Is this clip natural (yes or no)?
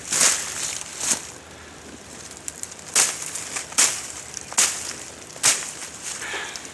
yes